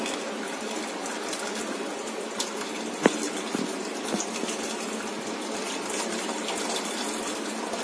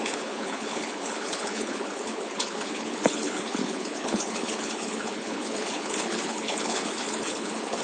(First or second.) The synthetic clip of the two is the second